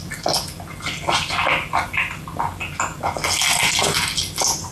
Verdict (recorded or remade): recorded